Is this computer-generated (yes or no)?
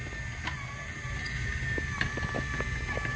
no